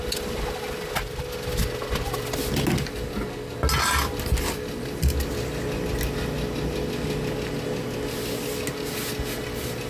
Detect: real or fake real